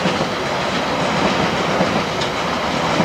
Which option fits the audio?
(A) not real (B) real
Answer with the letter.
B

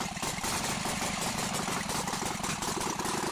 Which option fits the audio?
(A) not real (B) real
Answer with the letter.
A